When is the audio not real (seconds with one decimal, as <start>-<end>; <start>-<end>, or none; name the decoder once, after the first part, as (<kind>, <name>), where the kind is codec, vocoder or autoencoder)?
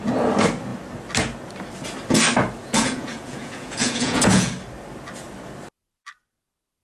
2.6-4.5 (vocoder, Vocos)